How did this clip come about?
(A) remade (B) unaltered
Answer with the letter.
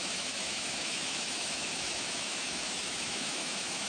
A